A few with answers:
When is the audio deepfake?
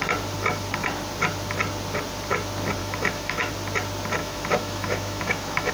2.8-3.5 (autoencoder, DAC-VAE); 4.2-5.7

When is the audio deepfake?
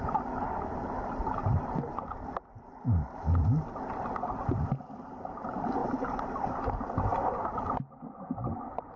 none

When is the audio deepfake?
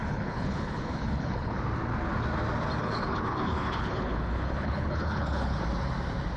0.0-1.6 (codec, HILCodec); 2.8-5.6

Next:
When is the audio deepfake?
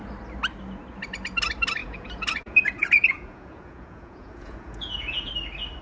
1.8-5.3 (vocoder, Vocos)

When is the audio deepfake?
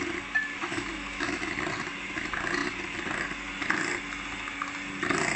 0.6-1.4 (autoencoder, DAC-VAE)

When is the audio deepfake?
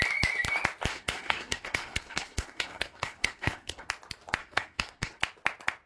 0.9-3.9 (codec, SNAC); 4.4-5.2